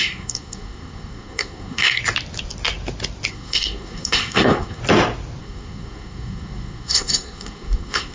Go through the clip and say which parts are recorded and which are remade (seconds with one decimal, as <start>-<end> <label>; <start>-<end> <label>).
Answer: 0.0-2.0 remade; 2.0-3.3 recorded; 3.3-4.8 remade; 4.8-5.4 recorded; 5.4-8.1 remade

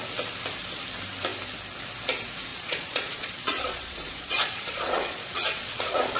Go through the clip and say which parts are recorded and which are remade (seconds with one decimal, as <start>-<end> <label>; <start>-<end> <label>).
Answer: 0.0-2.5 recorded; 2.5-6.2 remade

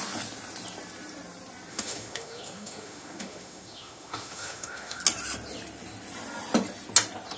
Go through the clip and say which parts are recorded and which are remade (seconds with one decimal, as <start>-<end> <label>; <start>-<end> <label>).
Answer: 0.0-1.7 recorded; 1.7-5.0 remade; 5.0-7.4 recorded

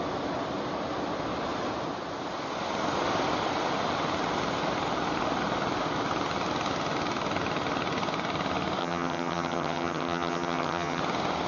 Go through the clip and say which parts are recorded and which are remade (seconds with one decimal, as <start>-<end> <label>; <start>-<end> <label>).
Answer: 0.0-8.8 recorded; 8.8-11.0 remade; 11.0-11.5 recorded